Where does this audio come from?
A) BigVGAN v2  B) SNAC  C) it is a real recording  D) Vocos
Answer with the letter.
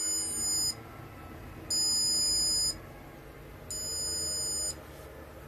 C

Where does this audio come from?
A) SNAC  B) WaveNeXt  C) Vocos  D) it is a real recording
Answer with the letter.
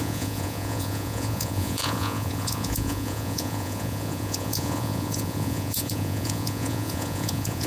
C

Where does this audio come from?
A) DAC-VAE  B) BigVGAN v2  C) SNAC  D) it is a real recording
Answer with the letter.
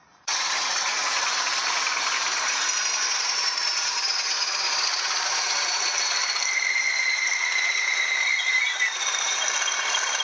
B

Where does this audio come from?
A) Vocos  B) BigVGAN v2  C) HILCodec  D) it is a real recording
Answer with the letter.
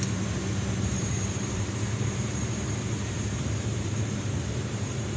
B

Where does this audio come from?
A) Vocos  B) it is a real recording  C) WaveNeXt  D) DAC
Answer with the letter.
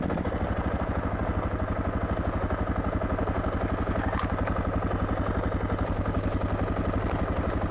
B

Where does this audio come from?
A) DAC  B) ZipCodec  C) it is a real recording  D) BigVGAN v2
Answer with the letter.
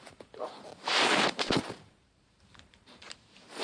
D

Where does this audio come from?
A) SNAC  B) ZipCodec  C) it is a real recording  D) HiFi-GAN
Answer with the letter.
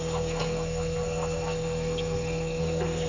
A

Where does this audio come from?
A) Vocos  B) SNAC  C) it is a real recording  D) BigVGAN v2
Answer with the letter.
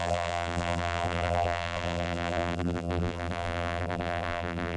D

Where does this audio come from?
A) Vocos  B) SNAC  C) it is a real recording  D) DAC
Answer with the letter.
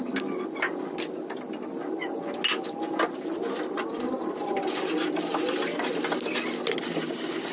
C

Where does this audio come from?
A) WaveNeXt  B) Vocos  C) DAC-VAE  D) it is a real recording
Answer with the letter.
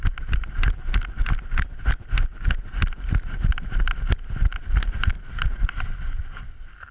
D